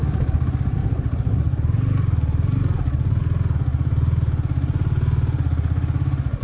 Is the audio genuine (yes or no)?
yes